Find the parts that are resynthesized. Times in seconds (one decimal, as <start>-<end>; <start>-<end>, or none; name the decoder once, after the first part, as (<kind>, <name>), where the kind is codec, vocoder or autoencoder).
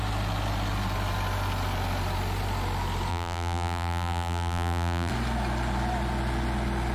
3.1-5.1 (vocoder, BigVGAN v2)